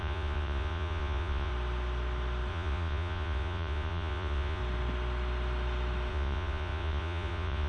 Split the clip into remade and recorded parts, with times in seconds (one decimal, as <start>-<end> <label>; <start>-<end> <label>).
0.0-1.5 remade; 1.5-2.5 recorded; 2.5-4.6 remade; 4.6-6.1 recorded; 6.1-7.7 remade